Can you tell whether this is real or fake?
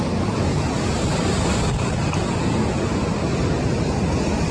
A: real